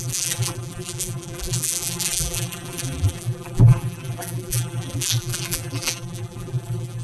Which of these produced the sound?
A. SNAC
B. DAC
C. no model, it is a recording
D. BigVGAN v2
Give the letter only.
D